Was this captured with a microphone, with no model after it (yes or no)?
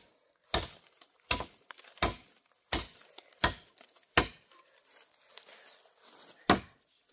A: yes